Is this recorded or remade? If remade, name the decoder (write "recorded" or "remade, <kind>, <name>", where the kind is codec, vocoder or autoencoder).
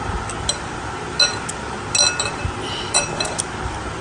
recorded